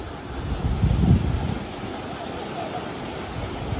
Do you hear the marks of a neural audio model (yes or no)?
no